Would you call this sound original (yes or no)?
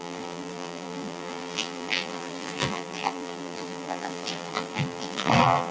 no